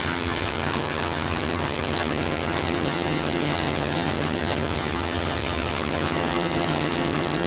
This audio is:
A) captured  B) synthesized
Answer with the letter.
B